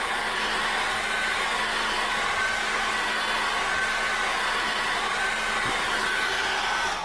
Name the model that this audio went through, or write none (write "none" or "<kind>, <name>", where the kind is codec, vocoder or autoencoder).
none